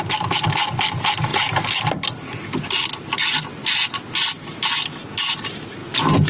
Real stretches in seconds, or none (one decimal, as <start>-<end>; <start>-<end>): 0.0-6.3